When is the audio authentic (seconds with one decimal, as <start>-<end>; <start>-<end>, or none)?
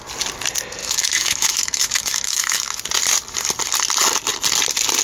0.0-0.8; 2.8-5.0